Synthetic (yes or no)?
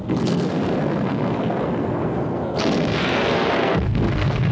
yes